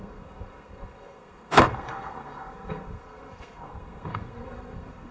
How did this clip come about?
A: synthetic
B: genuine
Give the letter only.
A